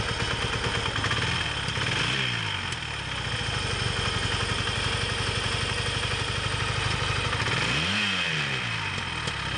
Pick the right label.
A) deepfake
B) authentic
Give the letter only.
B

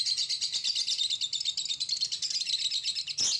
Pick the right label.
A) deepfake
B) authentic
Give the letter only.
B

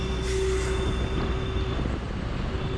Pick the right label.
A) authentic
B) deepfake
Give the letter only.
A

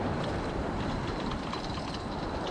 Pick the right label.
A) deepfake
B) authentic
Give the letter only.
B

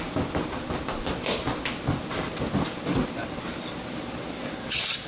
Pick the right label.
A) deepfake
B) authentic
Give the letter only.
B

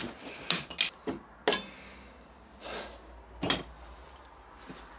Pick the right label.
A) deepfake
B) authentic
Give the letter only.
B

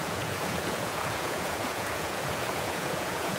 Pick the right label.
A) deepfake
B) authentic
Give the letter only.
A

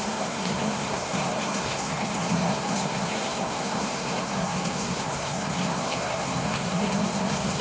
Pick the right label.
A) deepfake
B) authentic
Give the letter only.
A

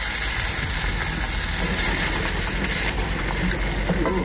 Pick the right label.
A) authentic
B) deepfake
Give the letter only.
A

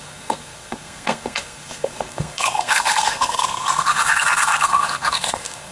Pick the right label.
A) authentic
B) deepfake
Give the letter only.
B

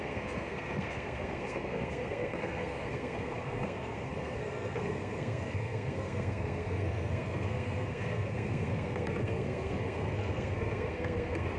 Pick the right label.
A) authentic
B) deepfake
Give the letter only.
B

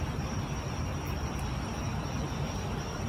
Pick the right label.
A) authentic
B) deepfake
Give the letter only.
A